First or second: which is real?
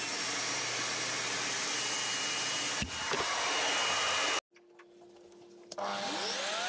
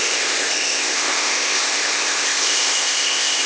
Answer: first